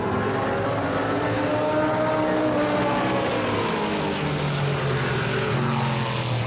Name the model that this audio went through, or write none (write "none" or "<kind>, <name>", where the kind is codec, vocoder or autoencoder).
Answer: none